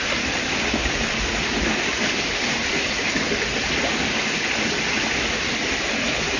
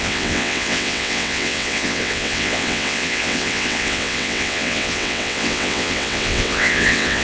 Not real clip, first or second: second